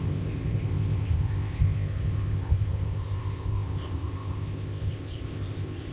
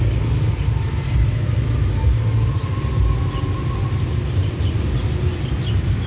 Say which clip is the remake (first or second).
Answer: first